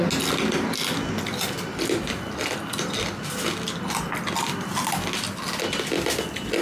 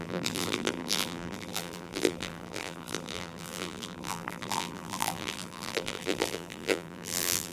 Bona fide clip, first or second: first